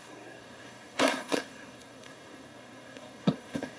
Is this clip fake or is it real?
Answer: fake